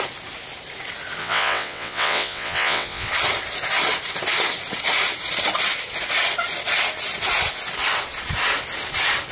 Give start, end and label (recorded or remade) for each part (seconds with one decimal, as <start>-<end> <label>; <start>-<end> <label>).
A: 0.0-1.2 recorded; 1.2-3.1 remade; 3.1-9.3 recorded